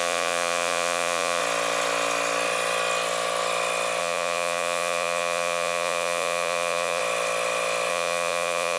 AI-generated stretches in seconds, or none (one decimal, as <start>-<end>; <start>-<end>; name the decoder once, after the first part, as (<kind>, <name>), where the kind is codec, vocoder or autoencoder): 0.0-1.4 (vocoder, Vocos); 4.0-7.0; 7.9-8.8